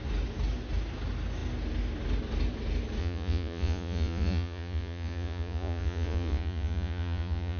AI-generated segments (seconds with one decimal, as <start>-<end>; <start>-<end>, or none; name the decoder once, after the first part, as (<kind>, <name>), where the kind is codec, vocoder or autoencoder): 3.0-7.6 (vocoder, Vocos)